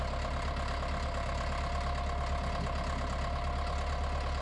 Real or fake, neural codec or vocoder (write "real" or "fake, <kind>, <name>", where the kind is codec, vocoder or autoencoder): real